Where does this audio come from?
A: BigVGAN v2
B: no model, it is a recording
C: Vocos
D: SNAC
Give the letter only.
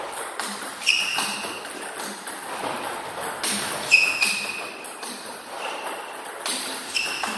B